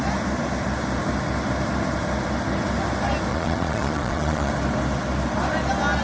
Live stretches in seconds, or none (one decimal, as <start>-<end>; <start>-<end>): 0.0-3.3; 4.5-6.0